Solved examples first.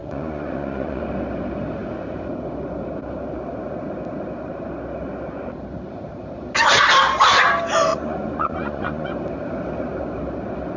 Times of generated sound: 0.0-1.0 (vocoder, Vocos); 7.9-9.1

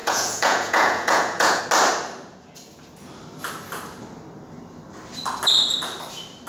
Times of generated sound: 0.0-1.6 (vocoder, Vocos)

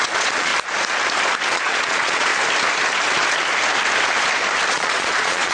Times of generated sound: 0.0-0.5 (vocoder, Vocos); 1.5-2.3; 4.7-5.5